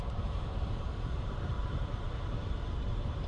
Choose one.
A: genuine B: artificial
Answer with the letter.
B